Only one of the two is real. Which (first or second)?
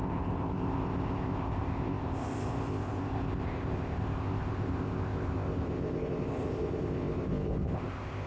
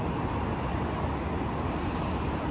second